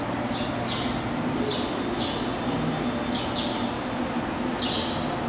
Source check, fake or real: real